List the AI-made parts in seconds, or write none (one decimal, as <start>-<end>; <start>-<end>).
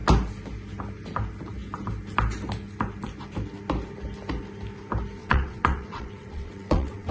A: 5.2-7.1